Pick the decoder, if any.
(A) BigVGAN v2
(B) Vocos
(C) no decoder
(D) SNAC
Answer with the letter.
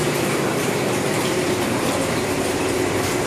C